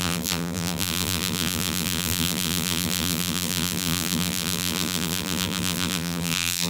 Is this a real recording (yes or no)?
no